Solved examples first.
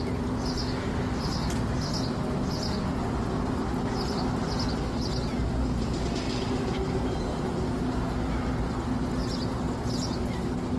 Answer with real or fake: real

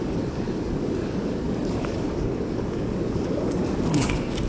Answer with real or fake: fake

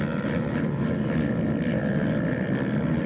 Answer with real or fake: real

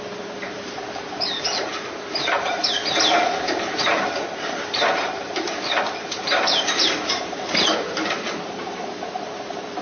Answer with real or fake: fake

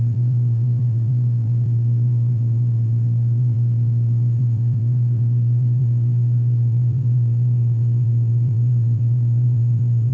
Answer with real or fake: fake